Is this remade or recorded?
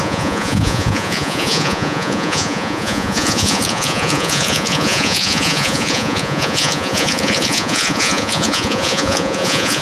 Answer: remade